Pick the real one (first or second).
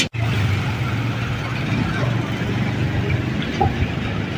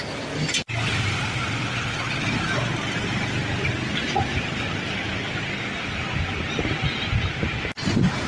first